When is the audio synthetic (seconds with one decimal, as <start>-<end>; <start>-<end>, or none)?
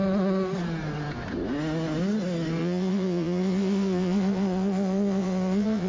2.6-5.9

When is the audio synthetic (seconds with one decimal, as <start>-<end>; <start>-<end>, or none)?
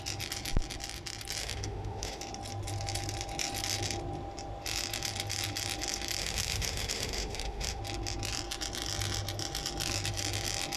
1.4-2.2; 6.2-7.8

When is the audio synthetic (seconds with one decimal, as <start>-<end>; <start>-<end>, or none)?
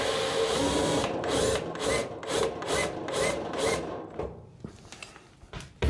none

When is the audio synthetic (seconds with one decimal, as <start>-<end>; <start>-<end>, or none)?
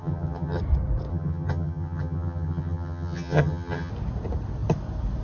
0.0-0.6; 1.1-3.9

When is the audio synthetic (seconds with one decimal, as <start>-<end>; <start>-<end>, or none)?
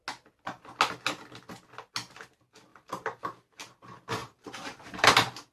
2.7-3.6; 4.2-5.1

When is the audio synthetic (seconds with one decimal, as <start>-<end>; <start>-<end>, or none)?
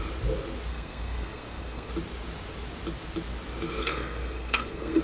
0.7-1.9; 3.8-5.0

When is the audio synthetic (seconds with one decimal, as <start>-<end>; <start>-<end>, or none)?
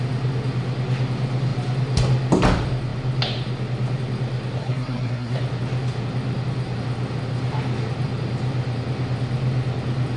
4.6-5.4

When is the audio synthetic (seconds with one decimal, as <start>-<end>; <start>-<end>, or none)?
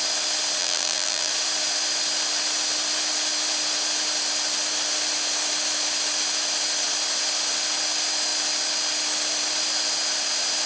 0.6-1.3